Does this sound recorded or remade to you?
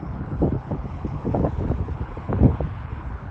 remade